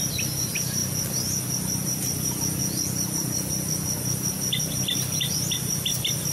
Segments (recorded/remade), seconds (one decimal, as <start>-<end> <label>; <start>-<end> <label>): 0.0-0.8 remade; 0.8-4.6 recorded; 4.6-6.3 remade